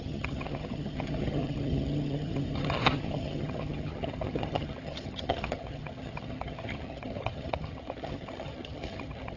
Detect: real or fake fake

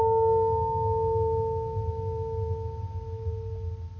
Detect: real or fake real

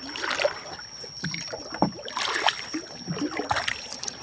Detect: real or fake real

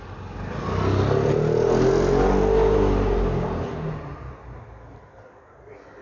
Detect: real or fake real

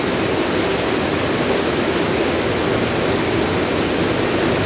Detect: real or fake real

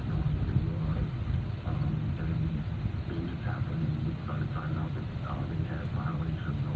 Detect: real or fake real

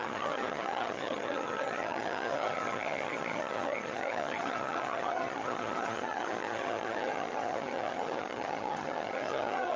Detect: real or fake fake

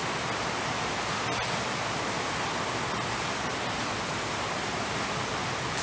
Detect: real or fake real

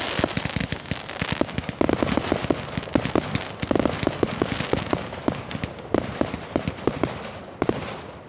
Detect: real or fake real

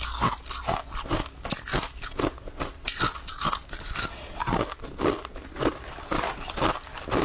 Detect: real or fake real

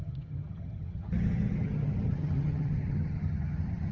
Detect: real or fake fake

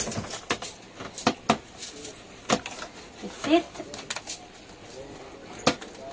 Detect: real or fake real